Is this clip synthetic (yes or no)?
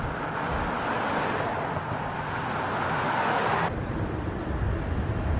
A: no